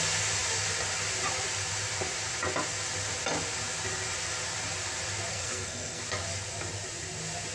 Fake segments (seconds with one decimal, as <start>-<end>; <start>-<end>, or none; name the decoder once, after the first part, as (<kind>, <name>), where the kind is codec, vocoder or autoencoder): 5.3-6.0 (codec, SNAC)